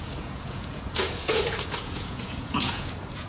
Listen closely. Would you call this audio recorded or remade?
remade